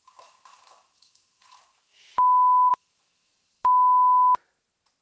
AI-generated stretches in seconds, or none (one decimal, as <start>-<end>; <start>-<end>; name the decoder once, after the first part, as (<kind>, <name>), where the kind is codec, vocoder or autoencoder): 0.0-3.3 (autoencoder, DAC-VAE)